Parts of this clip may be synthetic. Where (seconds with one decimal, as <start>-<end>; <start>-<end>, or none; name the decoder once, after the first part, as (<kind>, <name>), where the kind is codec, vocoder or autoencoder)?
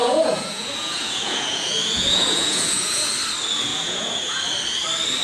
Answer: 0.0-3.1 (vocoder, Vocos); 3.7-4.4